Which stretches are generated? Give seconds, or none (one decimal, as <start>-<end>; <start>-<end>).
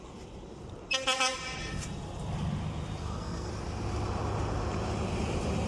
3.0-3.5